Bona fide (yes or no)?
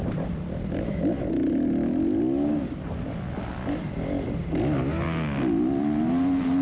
yes